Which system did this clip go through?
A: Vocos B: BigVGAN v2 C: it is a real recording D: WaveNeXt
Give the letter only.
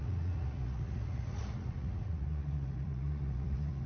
A